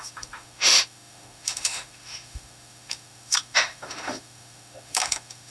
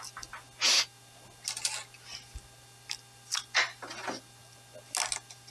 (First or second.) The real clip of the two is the second